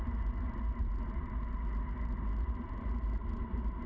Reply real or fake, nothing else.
real